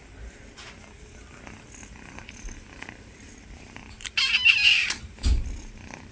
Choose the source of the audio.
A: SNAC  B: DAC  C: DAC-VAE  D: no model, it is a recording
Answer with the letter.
D